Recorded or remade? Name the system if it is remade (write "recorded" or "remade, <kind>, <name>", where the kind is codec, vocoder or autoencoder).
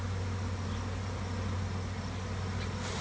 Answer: recorded